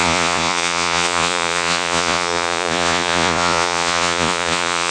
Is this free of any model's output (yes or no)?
no